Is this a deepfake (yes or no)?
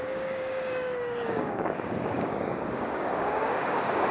yes